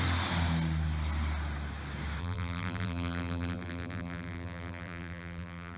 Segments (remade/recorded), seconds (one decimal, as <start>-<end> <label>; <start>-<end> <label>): 0.0-2.2 recorded; 2.2-5.8 remade

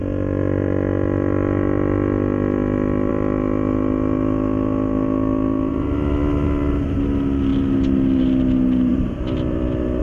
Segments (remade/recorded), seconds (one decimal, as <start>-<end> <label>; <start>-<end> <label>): 0.0-8.9 recorded; 8.9-10.0 remade

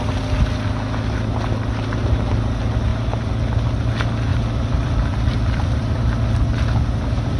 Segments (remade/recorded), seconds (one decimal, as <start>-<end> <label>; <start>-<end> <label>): 0.0-4.3 recorded; 4.3-6.0 remade; 6.0-7.4 recorded

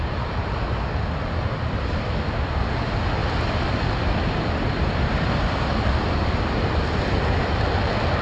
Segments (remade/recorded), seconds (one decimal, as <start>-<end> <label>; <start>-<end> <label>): 0.0-3.2 recorded; 3.2-7.1 remade; 7.1-8.2 recorded

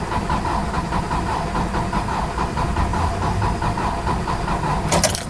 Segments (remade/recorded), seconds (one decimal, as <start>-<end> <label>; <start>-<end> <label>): 0.0-2.9 recorded; 2.9-3.4 remade; 3.4-5.3 recorded

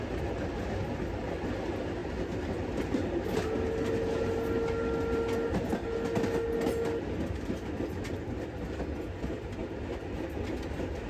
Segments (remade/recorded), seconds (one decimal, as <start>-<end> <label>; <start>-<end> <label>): 0.0-11.1 recorded

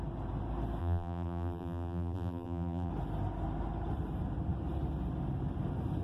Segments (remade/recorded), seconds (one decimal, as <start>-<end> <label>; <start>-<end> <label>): 0.0-0.8 recorded; 0.8-2.9 remade; 2.9-6.0 recorded

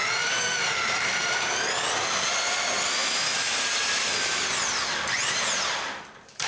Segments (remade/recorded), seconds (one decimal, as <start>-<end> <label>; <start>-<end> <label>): 0.0-0.5 recorded; 0.5-3.0 remade; 3.0-5.7 recorded; 5.7-6.5 remade